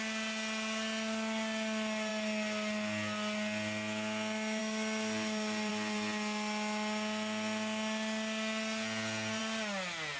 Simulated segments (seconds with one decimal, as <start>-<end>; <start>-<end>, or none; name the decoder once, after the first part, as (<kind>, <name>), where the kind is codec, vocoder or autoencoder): none